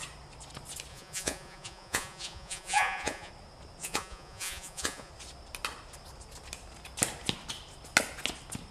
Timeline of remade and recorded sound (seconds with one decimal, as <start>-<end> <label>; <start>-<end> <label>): 0.0-0.9 recorded; 0.9-3.3 remade; 3.3-3.8 recorded; 3.8-5.1 remade; 5.1-8.7 recorded